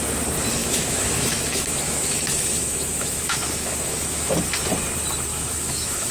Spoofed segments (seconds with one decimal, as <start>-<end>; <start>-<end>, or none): 0.6-4.3; 5.3-6.1